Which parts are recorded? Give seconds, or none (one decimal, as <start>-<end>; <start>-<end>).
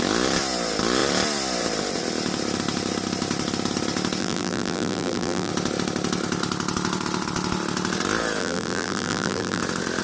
0.0-4.2; 5.5-8.4; 9.6-10.0